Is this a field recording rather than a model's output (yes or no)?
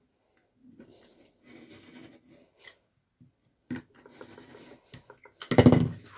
yes